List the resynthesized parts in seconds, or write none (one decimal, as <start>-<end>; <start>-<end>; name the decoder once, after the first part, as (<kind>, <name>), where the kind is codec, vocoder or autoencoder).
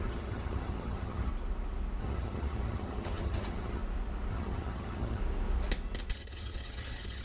0.0-1.3 (vocoder, HiFi-GAN); 2.0-3.8; 4.3-5.2; 6.1-7.2